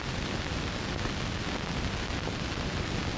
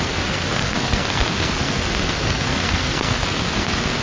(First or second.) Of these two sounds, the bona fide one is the first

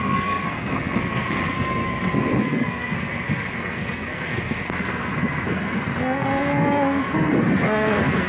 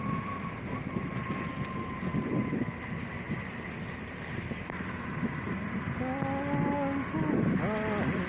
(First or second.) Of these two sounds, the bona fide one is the second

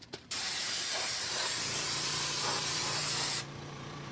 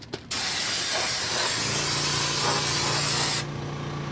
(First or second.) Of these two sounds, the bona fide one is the second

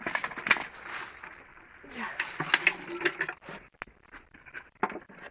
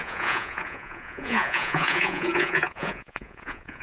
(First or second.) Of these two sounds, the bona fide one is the first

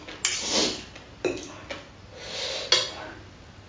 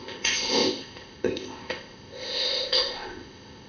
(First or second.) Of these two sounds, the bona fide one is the first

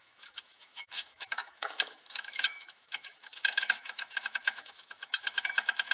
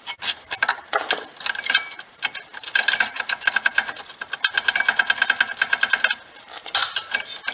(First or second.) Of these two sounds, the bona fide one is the second